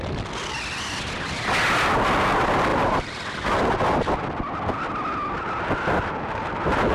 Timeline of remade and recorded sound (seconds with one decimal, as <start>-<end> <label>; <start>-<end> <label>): 0.0-6.9 recorded